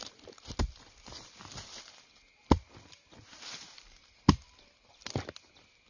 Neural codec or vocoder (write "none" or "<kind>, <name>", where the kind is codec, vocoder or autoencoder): none